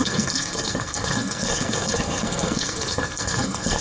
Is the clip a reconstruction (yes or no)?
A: yes